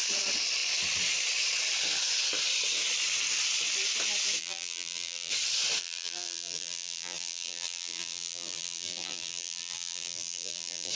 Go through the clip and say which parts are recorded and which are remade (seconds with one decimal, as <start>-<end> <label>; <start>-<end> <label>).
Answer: 0.0-4.4 recorded; 4.4-5.3 remade; 5.3-5.8 recorded; 5.8-10.9 remade